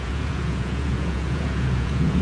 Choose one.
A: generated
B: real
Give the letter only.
A